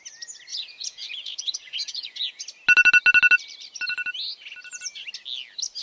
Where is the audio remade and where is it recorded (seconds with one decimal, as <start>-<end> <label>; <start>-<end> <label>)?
0.0-0.5 recorded; 0.5-2.4 remade; 2.4-5.8 recorded